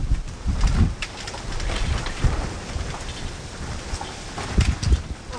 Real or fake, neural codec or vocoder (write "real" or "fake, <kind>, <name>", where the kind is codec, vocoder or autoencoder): real